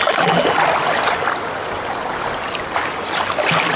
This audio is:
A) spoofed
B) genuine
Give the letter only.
B